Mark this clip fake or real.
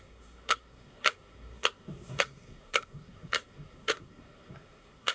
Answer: fake